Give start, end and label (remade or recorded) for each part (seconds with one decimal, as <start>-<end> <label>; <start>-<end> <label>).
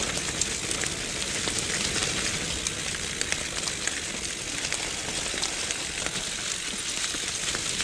0.0-7.8 recorded